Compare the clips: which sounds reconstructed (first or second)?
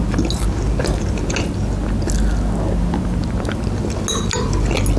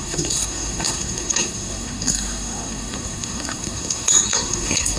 second